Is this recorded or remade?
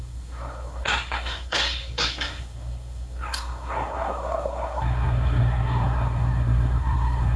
remade